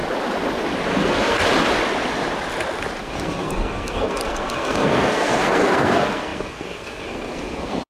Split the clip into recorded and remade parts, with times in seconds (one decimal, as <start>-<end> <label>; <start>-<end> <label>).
0.0-0.9 recorded; 0.9-1.4 remade; 1.4-3.0 recorded; 3.0-7.9 remade